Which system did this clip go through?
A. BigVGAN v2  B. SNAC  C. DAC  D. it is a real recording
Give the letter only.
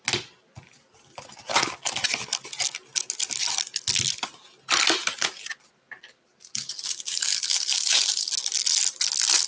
D